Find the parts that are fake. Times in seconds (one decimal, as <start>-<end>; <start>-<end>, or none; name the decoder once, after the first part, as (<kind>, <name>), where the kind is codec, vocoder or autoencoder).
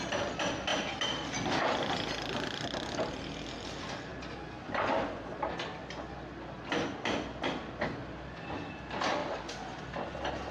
9.2-9.8 (vocoder, BigVGAN v2)